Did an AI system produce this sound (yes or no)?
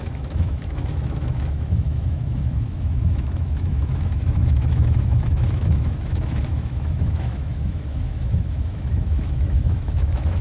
yes